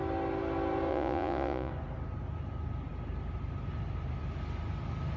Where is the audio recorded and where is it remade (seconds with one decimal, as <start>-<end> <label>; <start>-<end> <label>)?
0.0-0.9 recorded; 0.9-1.7 remade; 1.7-5.2 recorded